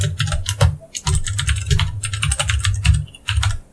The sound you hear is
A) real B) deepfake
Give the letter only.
A